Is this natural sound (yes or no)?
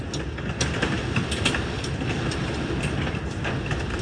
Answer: yes